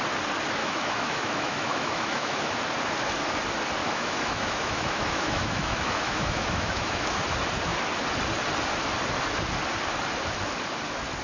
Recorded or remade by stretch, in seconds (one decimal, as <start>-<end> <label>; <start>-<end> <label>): 0.0-0.6 recorded; 0.6-2.6 remade; 2.6-3.8 recorded; 3.8-7.0 remade; 7.0-11.2 recorded